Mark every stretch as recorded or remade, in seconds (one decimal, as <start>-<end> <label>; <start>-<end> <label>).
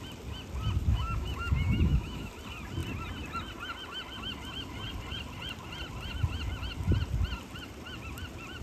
0.0-0.9 recorded; 0.9-2.3 remade; 2.3-8.6 recorded